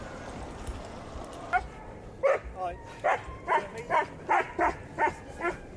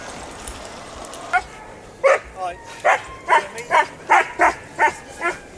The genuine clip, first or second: second